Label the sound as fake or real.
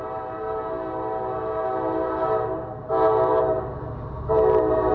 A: real